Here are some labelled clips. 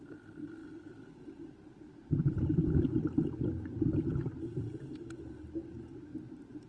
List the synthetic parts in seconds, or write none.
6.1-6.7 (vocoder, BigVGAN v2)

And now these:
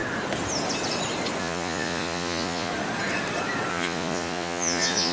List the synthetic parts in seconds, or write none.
1.4-2.7 (vocoder, Vocos); 3.7-5.1

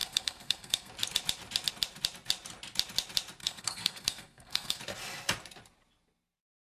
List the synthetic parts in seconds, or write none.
0.0-0.9 (codec, SNAC); 3.4-4.8

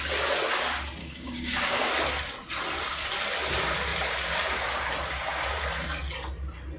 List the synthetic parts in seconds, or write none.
1.0-1.9 (codec, DAC)